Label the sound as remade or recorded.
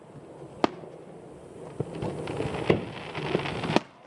recorded